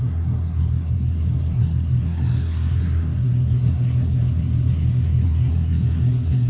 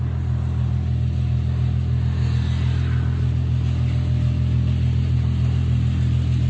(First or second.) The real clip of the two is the second